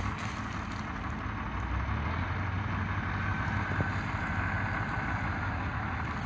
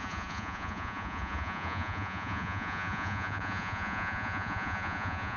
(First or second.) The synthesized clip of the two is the second